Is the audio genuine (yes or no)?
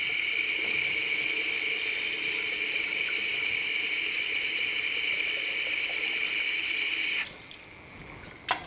yes